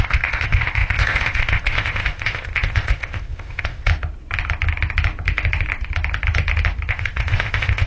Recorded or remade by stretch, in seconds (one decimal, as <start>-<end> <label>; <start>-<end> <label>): 0.0-3.9 remade; 3.9-6.9 recorded; 6.9-7.9 remade